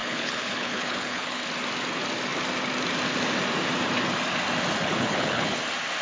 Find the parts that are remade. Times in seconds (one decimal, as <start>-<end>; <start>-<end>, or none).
0.0-1.4; 4.8-5.6